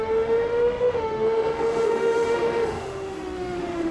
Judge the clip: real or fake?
fake